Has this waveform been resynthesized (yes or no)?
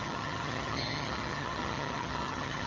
yes